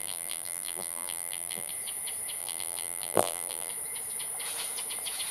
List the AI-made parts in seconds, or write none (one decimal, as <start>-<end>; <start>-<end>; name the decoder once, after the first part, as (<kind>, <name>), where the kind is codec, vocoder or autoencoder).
0.0-1.7 (vocoder, BigVGAN v2); 2.4-3.7